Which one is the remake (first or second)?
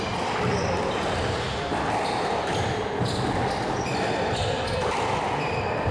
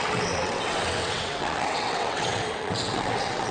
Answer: second